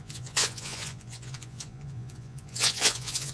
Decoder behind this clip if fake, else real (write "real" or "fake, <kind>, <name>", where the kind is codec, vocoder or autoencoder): fake, vocoder, Vocos